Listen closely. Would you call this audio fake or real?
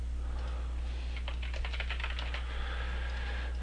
real